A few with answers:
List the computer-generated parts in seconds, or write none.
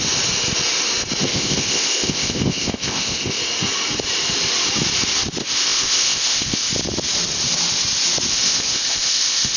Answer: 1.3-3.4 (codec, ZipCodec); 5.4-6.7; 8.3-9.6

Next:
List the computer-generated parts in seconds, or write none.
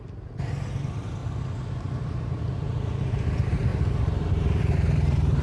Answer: 0.0-1.2 (vocoder, BigVGAN v2); 2.3-3.7; 4.3-5.4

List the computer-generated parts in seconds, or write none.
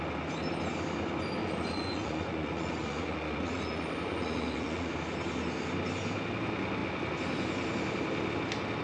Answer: 1.4-4.9 (vocoder, Vocos)